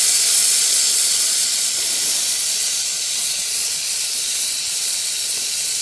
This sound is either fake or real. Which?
fake